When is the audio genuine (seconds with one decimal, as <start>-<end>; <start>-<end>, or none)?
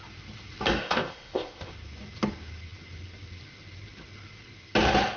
0.0-0.8; 1.7-5.2